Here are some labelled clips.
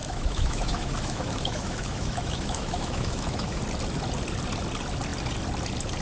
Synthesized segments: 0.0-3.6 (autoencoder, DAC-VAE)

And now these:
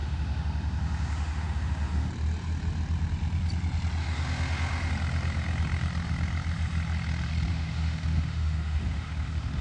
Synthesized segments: 0.0-2.1 (autoencoder, DAC-VAE); 4.0-4.9; 7.5-9.6

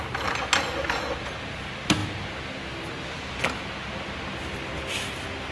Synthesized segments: none

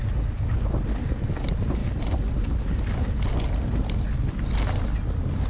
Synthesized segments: none